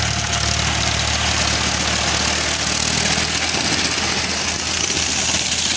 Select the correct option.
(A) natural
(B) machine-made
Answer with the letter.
A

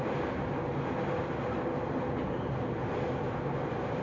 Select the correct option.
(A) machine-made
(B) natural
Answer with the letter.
B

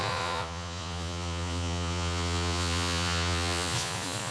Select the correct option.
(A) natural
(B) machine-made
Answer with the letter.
B